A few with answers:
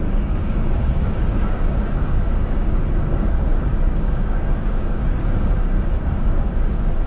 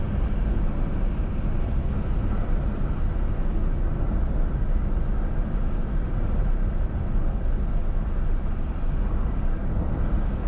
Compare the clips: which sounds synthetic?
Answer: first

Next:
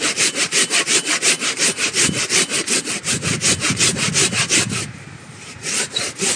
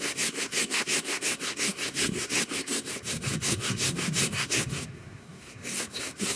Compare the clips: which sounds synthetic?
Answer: second